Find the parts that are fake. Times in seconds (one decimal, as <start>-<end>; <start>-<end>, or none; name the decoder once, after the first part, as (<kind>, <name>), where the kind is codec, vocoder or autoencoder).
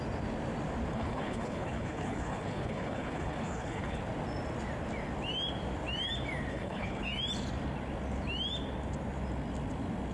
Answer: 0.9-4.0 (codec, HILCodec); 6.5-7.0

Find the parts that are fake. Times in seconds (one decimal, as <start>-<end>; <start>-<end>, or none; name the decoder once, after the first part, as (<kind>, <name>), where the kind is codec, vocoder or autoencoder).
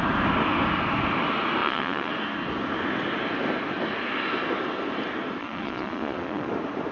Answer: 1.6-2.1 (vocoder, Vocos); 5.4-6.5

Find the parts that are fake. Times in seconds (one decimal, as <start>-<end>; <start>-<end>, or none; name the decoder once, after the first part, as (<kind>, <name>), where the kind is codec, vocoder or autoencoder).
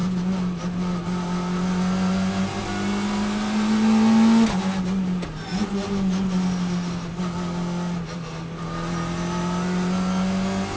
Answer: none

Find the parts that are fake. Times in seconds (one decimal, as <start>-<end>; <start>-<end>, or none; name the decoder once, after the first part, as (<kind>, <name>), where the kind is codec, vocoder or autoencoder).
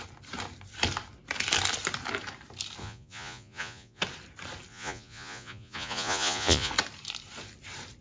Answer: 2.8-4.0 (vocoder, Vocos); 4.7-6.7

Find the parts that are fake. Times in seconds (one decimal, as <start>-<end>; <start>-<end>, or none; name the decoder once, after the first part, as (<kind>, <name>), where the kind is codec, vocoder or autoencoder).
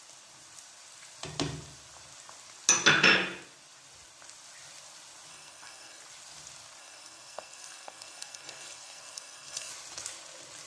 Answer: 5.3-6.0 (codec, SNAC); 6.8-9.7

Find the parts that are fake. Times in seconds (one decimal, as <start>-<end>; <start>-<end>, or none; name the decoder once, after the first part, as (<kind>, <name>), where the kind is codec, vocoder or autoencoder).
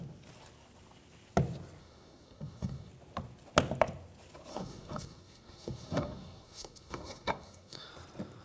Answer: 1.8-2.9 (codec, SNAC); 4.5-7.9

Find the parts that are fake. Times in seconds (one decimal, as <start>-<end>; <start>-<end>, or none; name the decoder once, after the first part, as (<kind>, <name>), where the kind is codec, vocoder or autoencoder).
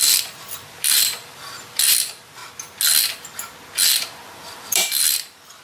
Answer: 0.0-2.4 (vocoder, BigVGAN v2); 4.0-5.6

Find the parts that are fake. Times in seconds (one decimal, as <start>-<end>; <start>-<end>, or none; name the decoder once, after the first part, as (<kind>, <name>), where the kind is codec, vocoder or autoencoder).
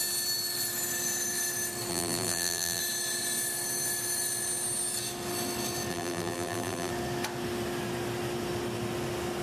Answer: 1.9-2.8 (vocoder, BigVGAN v2); 5.9-6.9